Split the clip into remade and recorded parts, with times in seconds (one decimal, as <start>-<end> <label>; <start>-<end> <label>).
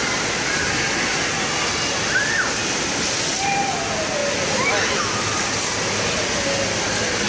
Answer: 0.0-2.6 recorded; 2.6-3.7 remade; 3.7-7.3 recorded